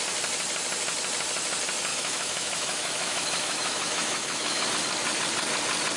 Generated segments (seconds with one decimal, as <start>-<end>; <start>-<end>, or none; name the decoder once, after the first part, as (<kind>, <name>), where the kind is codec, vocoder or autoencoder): 1.9-4.7 (autoencoder, DAC-VAE)